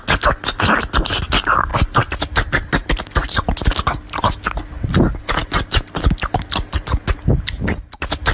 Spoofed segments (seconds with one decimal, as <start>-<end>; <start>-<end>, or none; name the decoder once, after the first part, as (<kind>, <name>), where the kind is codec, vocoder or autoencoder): none